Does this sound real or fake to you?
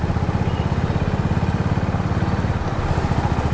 real